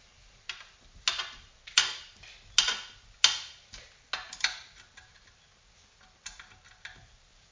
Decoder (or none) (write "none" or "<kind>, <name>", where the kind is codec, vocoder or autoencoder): none